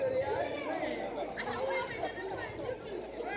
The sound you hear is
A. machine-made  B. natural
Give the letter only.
B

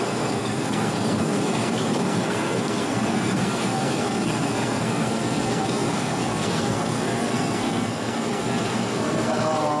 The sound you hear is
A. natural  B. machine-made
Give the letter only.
B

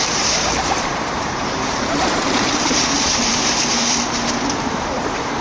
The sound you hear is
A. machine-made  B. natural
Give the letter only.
A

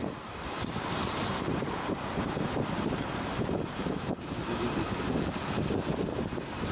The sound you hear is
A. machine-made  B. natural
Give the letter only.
A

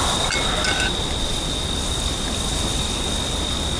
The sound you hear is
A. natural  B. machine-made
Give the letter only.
A